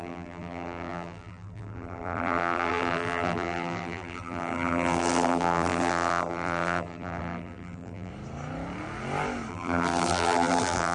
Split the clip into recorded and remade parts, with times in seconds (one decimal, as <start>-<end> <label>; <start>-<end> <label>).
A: 0.0-8.1 remade; 8.1-9.5 recorded; 9.5-10.9 remade